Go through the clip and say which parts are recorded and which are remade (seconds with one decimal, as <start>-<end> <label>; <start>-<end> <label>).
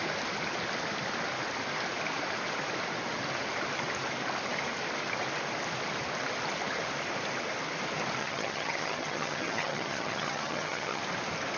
0.0-8.2 recorded; 8.2-11.0 remade; 11.0-11.6 recorded